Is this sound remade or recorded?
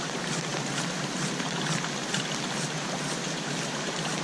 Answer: recorded